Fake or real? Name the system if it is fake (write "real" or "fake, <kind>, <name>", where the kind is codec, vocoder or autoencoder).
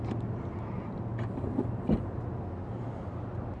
real